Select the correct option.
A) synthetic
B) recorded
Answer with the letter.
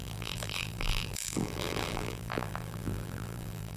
A